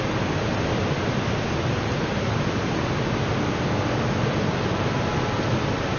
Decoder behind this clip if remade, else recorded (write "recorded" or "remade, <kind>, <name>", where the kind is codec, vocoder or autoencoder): recorded